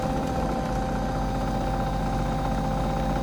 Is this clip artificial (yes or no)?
no